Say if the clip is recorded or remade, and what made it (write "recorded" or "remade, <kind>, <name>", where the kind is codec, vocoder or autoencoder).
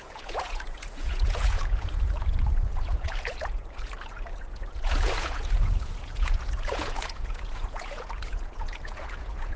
remade, vocoder, Vocos